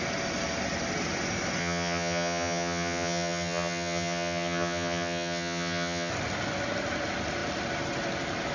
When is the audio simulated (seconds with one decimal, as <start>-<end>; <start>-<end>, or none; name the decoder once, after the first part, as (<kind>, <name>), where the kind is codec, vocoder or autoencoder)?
1.6-6.1 (vocoder, HiFi-GAN)